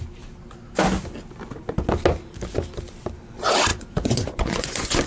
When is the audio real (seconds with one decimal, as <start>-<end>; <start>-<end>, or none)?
0.0-3.7